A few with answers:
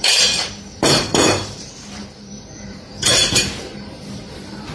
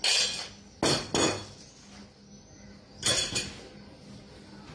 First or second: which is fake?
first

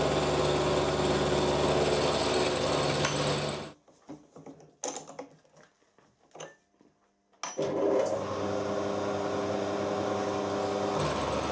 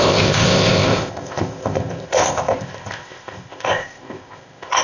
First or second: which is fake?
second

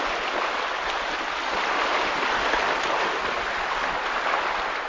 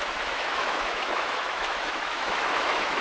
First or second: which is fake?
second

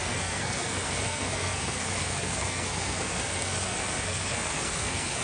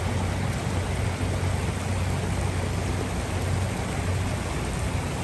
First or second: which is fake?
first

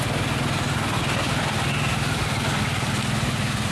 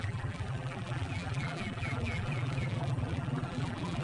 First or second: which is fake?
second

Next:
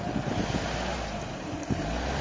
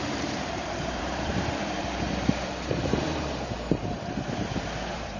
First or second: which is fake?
second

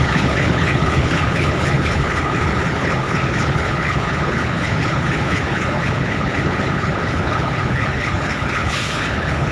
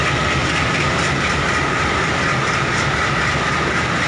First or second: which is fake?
first